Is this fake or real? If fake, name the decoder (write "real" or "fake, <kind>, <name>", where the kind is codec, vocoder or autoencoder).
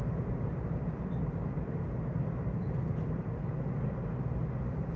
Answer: real